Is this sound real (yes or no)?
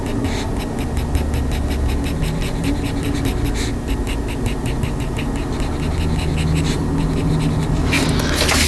yes